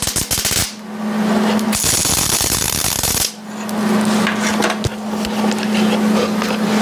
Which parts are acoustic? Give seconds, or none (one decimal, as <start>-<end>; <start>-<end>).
0.0-6.8